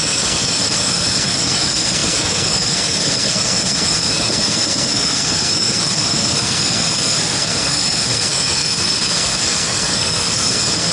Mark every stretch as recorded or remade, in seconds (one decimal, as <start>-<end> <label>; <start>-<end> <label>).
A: 0.0-10.9 remade